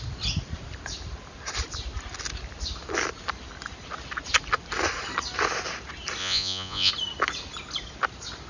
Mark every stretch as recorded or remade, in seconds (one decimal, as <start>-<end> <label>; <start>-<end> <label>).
0.0-6.2 recorded; 6.2-6.9 remade; 6.9-8.5 recorded